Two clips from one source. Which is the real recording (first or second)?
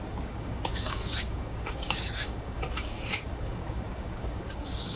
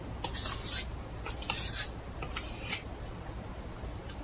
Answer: second